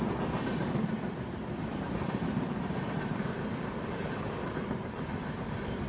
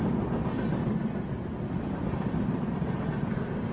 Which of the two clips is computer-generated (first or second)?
first